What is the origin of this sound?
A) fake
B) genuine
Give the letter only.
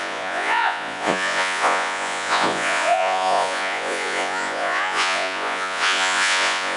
A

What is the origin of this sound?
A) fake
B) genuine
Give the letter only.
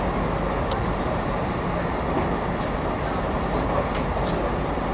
B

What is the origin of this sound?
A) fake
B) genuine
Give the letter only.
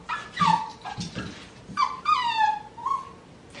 B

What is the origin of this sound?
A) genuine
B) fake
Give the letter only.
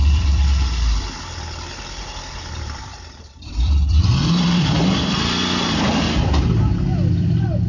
B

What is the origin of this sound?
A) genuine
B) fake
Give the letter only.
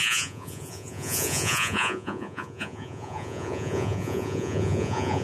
B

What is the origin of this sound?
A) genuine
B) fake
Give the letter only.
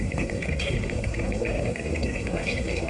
B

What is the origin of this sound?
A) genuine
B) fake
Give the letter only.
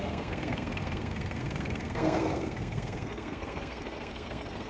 B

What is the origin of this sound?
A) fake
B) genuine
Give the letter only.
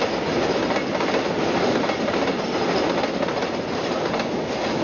B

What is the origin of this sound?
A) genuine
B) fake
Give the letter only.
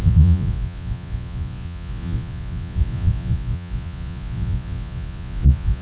B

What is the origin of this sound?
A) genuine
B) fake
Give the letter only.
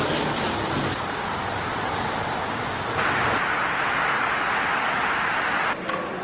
A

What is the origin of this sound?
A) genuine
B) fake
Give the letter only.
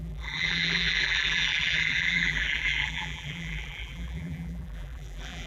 B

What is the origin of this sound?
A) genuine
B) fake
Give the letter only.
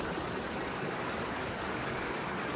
B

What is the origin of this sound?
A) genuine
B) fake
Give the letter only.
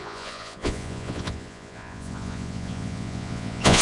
B